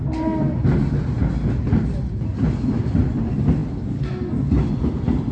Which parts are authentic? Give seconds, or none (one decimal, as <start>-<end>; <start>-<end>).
0.0-5.3